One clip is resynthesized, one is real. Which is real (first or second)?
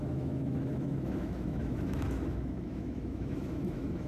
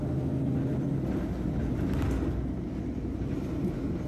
second